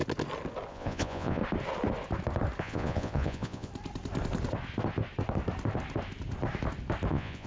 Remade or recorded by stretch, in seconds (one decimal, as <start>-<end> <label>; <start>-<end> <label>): 0.0-0.7 recorded; 0.7-1.4 remade; 1.4-2.6 recorded; 2.6-3.7 remade; 3.7-7.1 recorded; 7.1-7.5 remade